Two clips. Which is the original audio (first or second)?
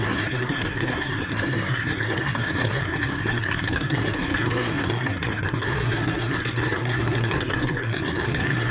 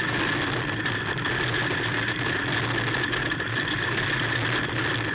second